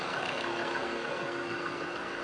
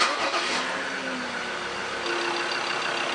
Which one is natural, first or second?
second